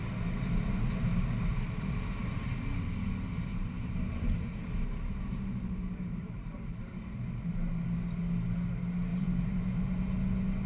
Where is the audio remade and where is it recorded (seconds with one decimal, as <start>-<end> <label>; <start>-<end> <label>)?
0.0-3.5 recorded; 3.5-7.7 remade; 7.7-9.1 recorded; 9.1-10.0 remade; 10.0-10.7 recorded